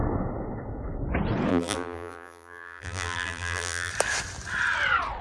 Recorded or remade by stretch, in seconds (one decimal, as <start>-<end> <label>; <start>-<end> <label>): 0.0-1.5 recorded; 1.5-3.9 remade; 3.9-5.2 recorded